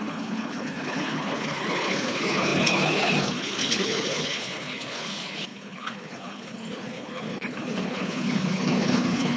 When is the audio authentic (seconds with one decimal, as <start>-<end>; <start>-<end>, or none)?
none